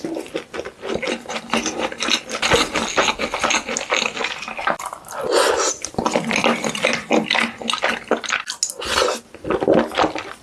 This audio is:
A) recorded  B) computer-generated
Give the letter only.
A